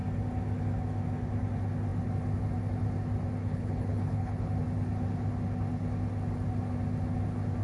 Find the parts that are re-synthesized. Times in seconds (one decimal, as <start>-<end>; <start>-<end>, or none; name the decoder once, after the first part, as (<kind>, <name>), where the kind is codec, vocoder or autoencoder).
3.4-4.5 (codec, HILCodec)